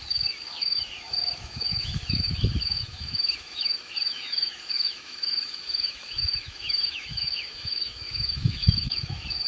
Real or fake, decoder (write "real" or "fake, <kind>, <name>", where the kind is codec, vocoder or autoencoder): fake, autoencoder, DAC-VAE